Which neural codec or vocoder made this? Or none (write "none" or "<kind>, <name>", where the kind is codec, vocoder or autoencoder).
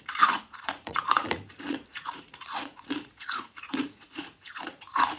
vocoder, Vocos